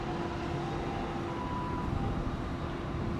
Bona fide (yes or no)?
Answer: yes